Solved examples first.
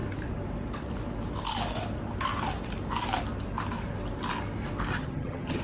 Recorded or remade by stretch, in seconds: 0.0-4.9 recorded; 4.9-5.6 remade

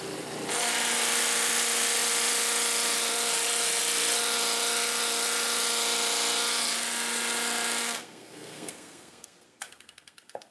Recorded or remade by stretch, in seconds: 0.0-7.8 recorded; 7.8-10.5 remade

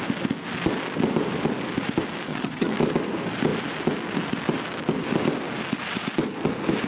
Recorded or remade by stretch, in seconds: 0.0-2.3 recorded; 2.3-2.8 remade; 2.8-6.9 recorded

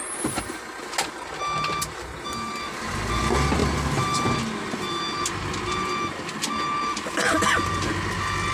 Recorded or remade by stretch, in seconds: 0.0-8.5 recorded

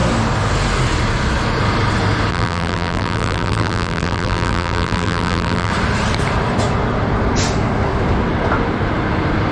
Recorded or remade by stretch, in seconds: 0.0-2.3 recorded; 2.3-5.7 remade; 5.7-9.5 recorded

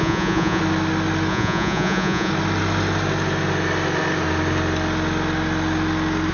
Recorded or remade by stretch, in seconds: 0.0-0.6 remade; 0.6-1.3 recorded; 1.3-2.3 remade; 2.3-6.3 recorded

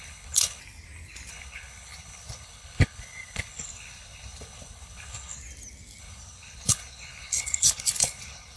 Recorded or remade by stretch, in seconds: 0.0-0.6 remade; 0.6-1.3 recorded; 1.3-5.4 remade; 5.4-6.0 recorded; 6.0-8.6 remade

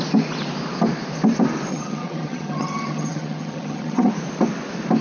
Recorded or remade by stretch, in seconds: 0.0-1.7 recorded; 1.7-4.1 remade; 4.1-5.0 recorded